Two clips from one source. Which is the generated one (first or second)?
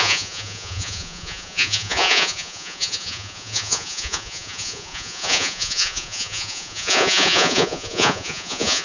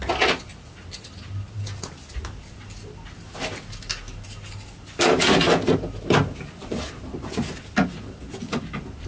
first